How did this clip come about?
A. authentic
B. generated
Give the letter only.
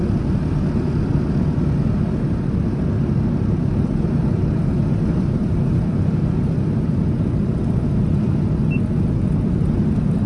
A